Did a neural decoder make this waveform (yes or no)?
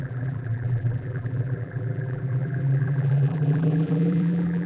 yes